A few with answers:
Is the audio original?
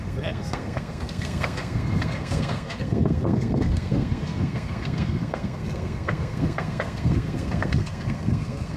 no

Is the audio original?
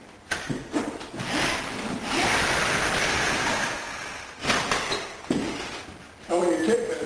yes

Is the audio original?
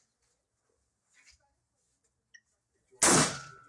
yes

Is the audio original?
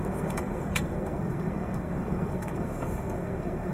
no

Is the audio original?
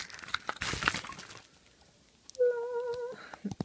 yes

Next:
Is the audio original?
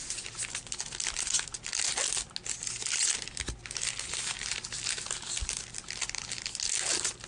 yes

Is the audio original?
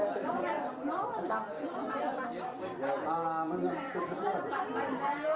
yes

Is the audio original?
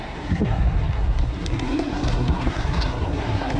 no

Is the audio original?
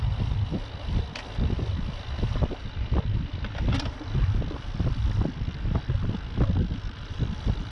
yes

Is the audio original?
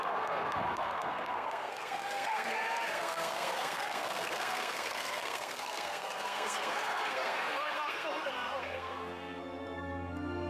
no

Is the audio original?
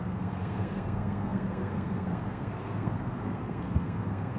no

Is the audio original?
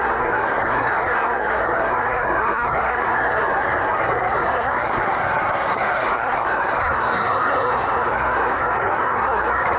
no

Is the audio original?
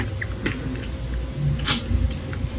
yes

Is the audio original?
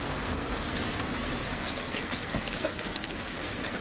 no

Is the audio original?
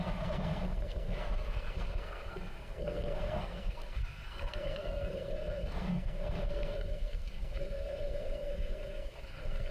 no